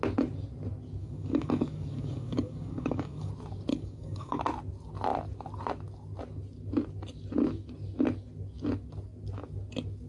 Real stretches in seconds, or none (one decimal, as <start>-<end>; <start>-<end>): 0.0-1.0; 3.3-3.7; 4.4-10.1